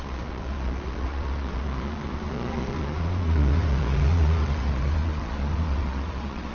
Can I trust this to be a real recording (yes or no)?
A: no